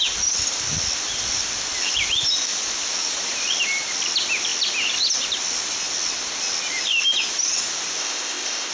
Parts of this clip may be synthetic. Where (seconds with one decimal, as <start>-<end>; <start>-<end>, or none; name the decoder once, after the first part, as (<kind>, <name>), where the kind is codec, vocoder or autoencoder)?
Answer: 8.0-8.7 (codec, ZipCodec)